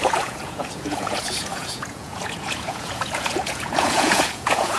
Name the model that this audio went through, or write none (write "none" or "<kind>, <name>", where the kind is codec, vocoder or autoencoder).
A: vocoder, Vocos